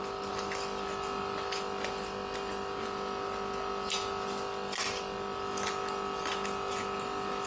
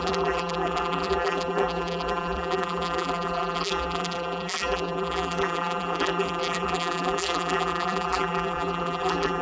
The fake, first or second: second